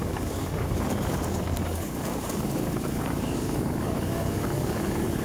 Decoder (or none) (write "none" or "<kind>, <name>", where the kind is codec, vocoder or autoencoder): codec, DAC